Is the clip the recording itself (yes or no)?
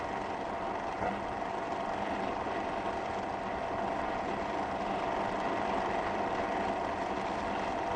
yes